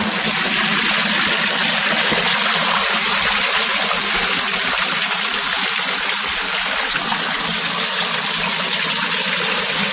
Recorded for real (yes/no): yes